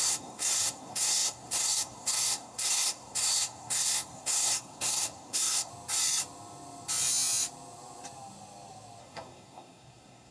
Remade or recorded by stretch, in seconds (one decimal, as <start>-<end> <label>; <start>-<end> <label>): 0.0-5.7 remade; 5.7-9.0 recorded; 9.0-10.3 remade